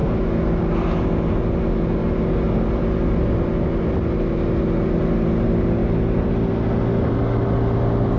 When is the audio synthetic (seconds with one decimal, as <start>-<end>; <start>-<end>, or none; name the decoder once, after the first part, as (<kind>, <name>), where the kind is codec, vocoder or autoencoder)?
none